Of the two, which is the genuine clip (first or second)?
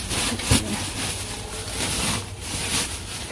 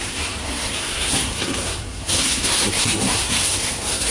first